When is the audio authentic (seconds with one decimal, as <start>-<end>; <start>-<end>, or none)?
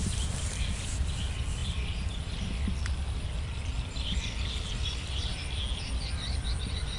0.0-7.0